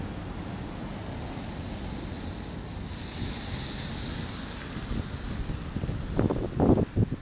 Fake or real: real